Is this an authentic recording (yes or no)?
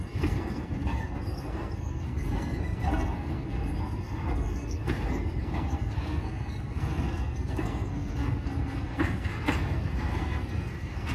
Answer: no